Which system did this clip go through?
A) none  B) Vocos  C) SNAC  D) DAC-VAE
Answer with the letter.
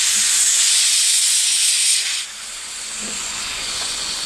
B